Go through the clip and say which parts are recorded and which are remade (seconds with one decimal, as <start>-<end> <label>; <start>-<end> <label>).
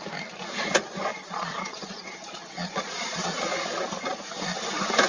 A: 0.0-1.1 recorded; 1.1-4.2 remade; 4.2-5.1 recorded